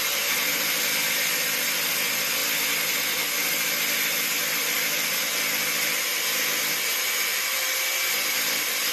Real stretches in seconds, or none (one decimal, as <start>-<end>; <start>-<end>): 0.0-7.3